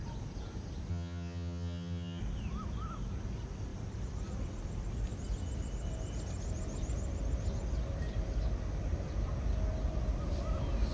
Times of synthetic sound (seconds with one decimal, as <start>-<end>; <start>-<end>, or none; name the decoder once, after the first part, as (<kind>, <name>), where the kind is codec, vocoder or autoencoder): 0.9-2.2 (vocoder, HiFi-GAN)